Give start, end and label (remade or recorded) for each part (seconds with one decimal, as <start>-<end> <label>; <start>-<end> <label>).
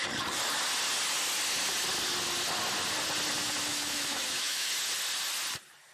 0.0-3.7 recorded; 3.7-4.7 remade; 4.7-5.9 recorded